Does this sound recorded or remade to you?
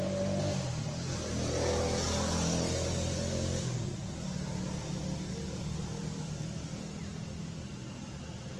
recorded